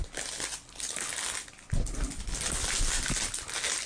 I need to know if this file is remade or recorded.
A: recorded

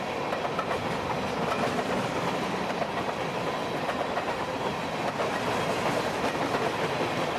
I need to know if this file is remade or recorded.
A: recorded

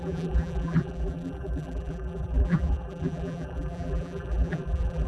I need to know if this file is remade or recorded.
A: remade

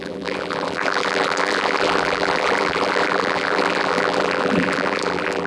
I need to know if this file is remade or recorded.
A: remade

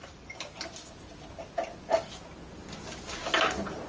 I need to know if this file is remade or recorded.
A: recorded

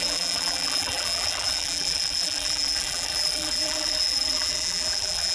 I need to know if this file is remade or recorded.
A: remade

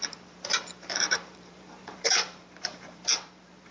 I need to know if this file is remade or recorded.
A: remade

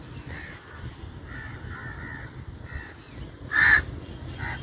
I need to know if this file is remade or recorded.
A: recorded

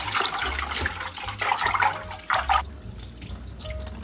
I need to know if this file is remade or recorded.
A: recorded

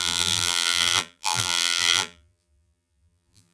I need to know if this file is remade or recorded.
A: remade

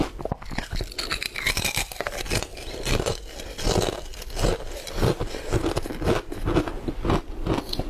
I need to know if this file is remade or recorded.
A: recorded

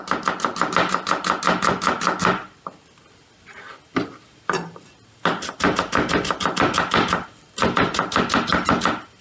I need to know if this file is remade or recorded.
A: recorded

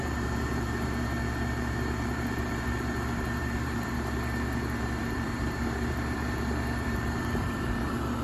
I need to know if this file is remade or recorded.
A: remade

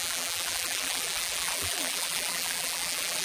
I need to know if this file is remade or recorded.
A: remade